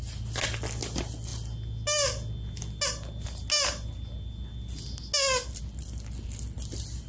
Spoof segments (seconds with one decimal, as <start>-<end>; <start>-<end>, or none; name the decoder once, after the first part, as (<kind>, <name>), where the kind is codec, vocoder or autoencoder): none